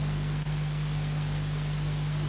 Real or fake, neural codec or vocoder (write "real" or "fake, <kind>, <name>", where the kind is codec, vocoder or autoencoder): fake, codec, SNAC